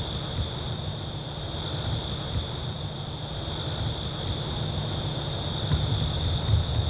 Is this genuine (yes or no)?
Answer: yes